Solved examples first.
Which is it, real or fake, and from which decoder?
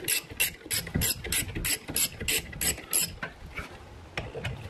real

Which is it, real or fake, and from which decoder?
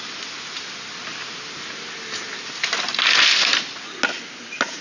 real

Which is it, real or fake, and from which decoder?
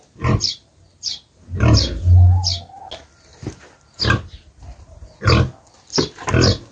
real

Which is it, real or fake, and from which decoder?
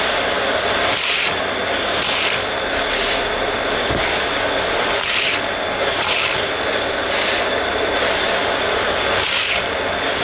real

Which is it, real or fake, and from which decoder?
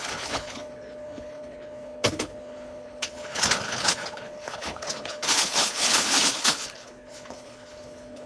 fake, codec, HILCodec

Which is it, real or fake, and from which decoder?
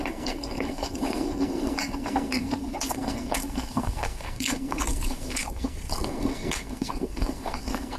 fake, codec, SNAC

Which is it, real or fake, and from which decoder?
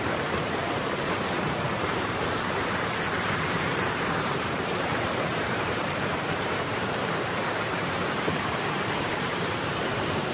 fake, vocoder, BigVGAN v2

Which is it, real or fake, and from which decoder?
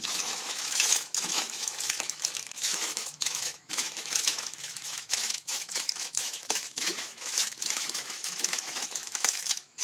fake, autoencoder, DAC-VAE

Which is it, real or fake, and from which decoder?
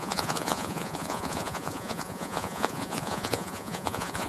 fake, vocoder, Vocos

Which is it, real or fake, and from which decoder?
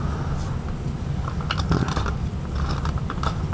real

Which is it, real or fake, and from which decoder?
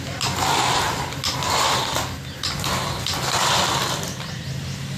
real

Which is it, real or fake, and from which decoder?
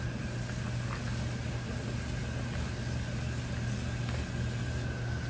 real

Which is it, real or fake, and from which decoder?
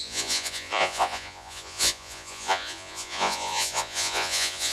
fake, vocoder, Vocos